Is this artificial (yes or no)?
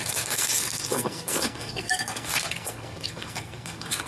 yes